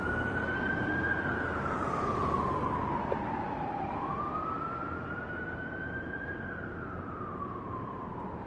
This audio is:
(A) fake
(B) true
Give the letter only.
A